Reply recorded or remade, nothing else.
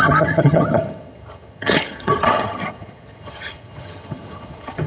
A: remade